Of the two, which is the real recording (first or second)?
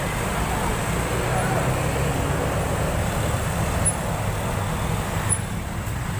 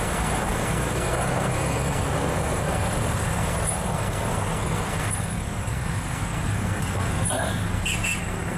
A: first